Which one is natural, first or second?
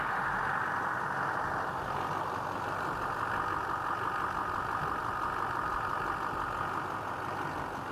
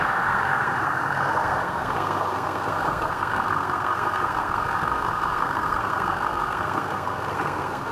first